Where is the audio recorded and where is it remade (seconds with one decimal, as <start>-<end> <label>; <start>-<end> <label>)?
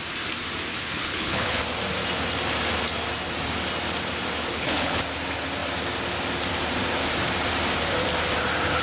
0.0-0.7 recorded; 0.7-1.6 remade; 1.6-4.5 recorded; 4.5-5.0 remade; 5.0-8.8 recorded